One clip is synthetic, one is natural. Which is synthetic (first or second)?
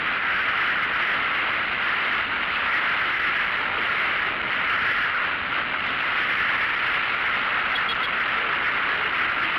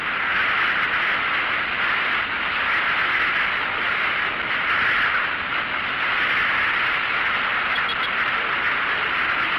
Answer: first